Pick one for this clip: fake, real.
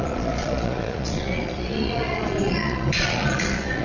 fake